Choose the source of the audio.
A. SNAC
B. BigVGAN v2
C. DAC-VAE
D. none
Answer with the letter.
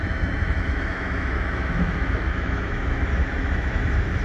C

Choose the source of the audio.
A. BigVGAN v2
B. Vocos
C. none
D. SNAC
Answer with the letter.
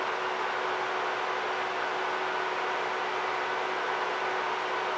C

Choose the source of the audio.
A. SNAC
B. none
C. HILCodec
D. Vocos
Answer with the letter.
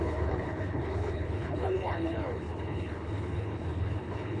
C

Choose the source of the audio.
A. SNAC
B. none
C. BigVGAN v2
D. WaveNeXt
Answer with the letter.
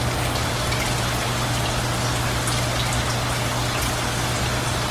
B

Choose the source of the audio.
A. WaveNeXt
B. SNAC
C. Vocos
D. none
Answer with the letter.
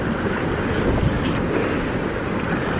D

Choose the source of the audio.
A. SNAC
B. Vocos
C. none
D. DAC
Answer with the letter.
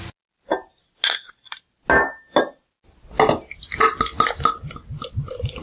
C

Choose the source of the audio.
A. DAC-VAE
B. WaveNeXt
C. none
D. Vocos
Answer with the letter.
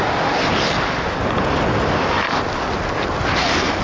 C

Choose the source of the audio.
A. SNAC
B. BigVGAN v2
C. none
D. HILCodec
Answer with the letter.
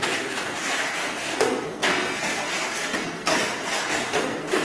A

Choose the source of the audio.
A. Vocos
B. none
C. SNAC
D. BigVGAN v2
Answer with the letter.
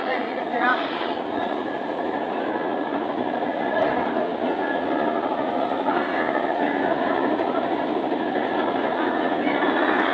A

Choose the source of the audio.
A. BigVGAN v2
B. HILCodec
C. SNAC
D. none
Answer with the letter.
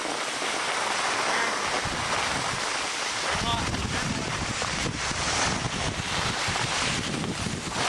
D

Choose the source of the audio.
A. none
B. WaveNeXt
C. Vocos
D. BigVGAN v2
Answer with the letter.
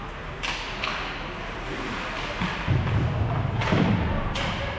A